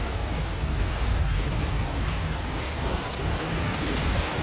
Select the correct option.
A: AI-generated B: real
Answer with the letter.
A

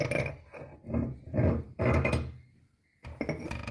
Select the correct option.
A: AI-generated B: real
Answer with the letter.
B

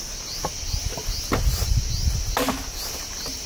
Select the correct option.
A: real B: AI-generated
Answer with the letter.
A